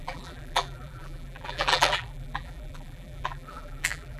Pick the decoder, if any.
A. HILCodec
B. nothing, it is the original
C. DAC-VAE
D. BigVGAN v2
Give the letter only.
D